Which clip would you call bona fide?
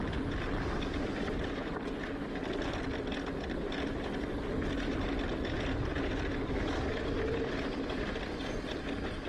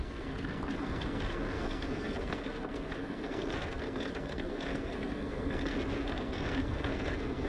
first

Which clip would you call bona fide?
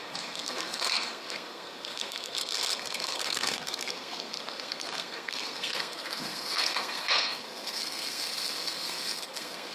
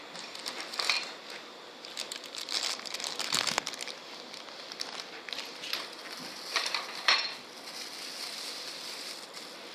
second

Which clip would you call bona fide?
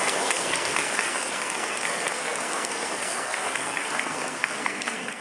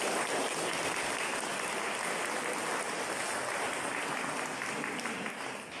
second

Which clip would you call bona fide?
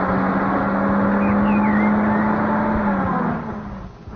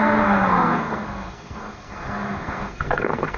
first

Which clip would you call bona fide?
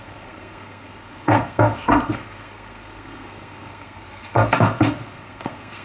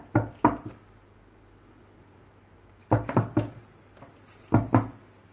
second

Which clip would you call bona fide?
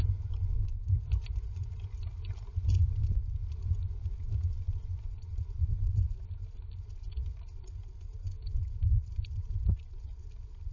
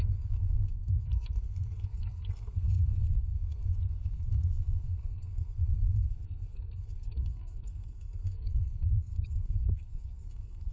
first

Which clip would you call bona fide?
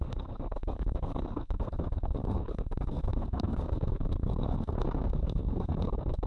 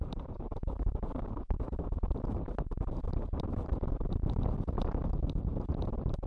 second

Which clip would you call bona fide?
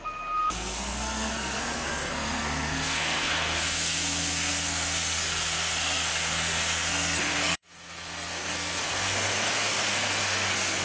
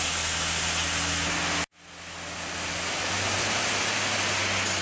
second